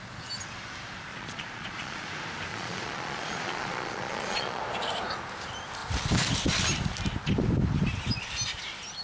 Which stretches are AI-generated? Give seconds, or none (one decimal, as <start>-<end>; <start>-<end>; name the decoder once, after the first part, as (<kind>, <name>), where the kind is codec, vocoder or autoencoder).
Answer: 1.1-2.1 (vocoder, Vocos); 2.5-4.6